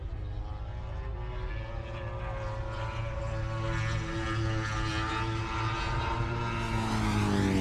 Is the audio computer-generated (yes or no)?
no